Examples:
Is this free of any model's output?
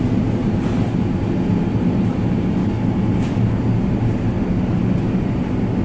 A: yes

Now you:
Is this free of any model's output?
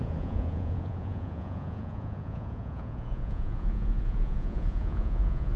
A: no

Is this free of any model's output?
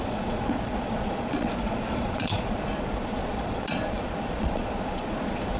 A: no